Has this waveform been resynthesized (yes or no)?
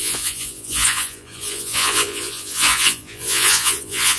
yes